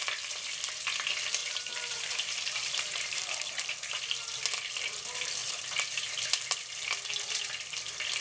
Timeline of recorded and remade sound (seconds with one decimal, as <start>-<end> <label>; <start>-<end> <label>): 0.0-1.4 recorded; 1.4-4.0 remade; 4.0-5.4 recorded; 5.4-6.4 remade; 6.4-8.2 recorded